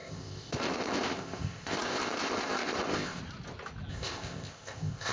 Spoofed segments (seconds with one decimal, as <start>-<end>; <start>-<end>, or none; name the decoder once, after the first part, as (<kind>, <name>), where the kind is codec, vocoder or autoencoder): 0.0-3.2 (codec, ZipCodec); 3.9-5.1